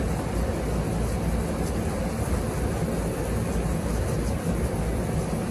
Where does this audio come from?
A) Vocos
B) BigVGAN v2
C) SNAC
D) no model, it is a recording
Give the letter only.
D